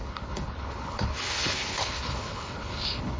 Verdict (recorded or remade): remade